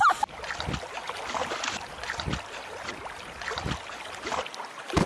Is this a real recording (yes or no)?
yes